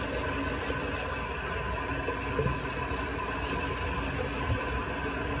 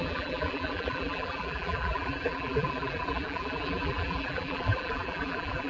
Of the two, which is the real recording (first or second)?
first